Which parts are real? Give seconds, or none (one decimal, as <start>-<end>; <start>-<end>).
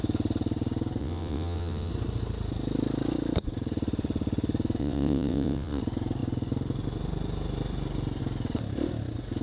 0.0-1.0; 1.9-4.8; 5.8-9.4